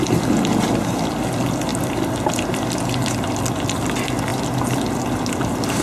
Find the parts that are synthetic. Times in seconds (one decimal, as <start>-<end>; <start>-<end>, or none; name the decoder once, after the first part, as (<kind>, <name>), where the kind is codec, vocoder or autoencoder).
none